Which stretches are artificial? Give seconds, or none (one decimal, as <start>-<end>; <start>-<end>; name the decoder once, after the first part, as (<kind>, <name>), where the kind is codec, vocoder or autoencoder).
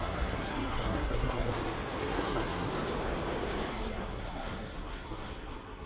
0.0-1.5 (codec, SNAC); 2.0-2.7; 3.7-5.9